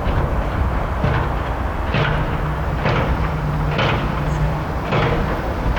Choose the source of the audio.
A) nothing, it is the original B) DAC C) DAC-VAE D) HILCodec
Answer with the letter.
A